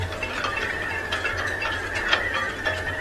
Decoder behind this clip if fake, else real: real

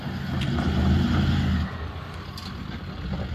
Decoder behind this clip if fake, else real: real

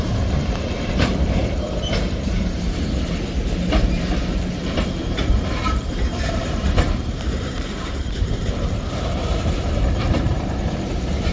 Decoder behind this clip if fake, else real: fake, vocoder, BigVGAN v2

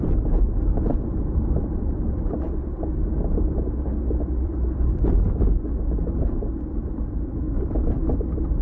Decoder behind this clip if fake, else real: fake, vocoder, BigVGAN v2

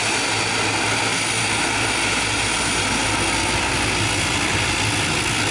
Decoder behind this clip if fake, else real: real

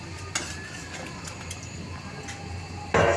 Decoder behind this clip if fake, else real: real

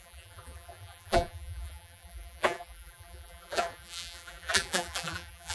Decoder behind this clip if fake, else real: fake, vocoder, BigVGAN v2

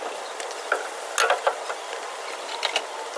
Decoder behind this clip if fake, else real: real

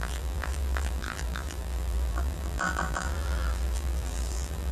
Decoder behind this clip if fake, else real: fake, vocoder, BigVGAN v2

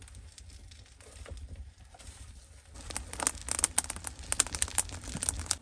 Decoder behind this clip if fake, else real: real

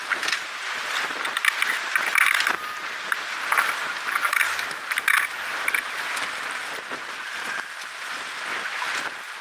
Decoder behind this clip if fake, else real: real